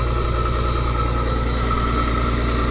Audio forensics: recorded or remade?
recorded